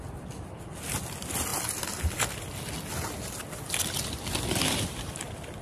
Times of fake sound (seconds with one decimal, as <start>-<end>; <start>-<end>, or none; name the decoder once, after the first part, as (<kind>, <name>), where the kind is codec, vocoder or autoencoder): none